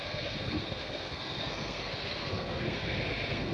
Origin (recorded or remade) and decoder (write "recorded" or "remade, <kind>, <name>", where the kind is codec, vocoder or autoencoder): remade, codec, SNAC